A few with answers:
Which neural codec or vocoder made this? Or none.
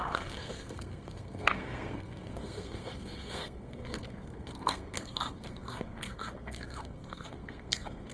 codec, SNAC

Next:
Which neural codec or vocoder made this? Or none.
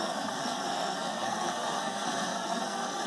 codec, SNAC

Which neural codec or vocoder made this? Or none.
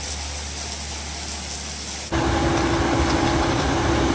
none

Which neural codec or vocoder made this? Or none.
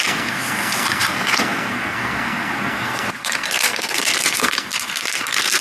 codec, SNAC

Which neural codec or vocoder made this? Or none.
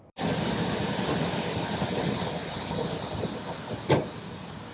none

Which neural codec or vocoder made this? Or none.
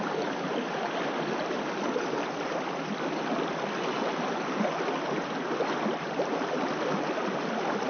none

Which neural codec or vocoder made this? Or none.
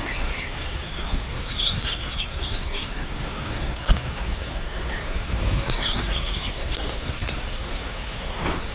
codec, SNAC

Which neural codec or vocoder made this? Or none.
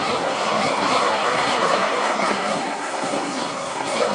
codec, SNAC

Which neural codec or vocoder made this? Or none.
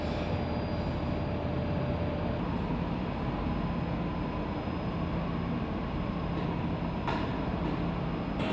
none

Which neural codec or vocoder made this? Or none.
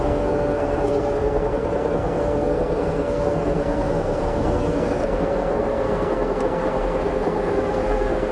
codec, SNAC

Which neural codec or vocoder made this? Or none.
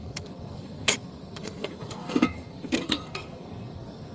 codec, SNAC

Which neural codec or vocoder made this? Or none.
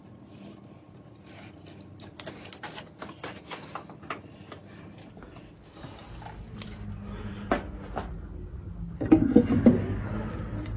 none